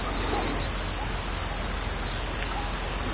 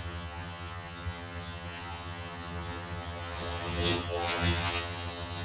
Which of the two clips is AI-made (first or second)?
second